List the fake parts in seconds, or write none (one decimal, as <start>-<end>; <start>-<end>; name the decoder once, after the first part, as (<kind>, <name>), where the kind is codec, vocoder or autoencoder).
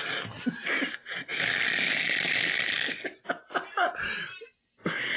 none